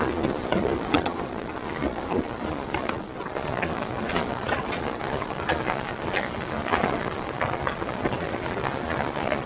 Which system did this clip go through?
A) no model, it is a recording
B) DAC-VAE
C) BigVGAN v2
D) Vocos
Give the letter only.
D